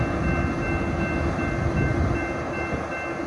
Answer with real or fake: real